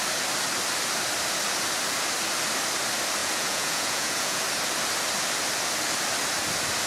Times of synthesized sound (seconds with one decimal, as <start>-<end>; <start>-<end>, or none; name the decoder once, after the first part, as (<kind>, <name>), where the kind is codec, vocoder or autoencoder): 3.2-4.4 (vocoder, Vocos)